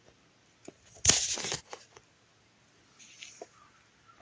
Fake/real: real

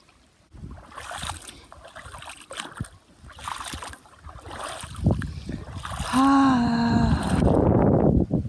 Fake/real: real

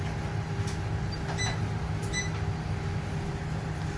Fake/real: real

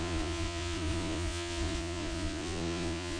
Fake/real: fake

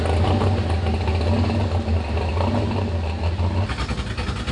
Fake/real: real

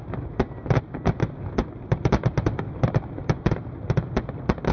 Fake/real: real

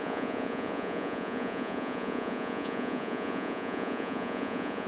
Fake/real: fake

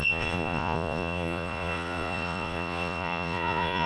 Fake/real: fake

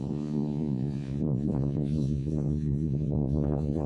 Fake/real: fake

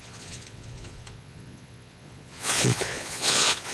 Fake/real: fake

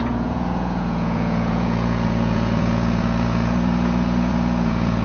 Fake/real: fake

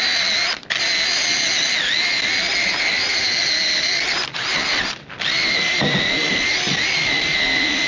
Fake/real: real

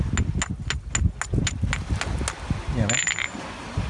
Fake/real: real